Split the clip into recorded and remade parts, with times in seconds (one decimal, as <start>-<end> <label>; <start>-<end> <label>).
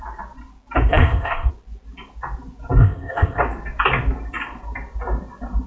0.0-0.9 recorded; 0.9-1.5 remade; 1.5-2.8 recorded; 2.8-3.4 remade; 3.4-5.7 recorded